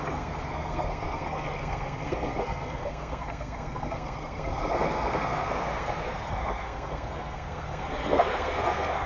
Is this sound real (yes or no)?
no